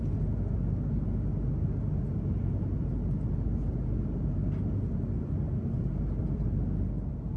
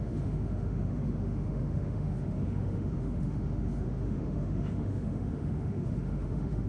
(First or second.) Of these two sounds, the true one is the first